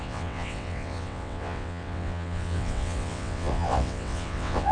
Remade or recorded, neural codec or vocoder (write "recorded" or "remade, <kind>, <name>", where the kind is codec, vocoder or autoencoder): remade, vocoder, WaveNeXt